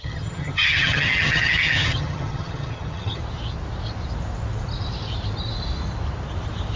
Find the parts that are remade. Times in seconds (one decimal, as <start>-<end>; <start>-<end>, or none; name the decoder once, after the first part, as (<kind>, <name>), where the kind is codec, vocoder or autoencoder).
0.0-3.2 (vocoder, HiFi-GAN)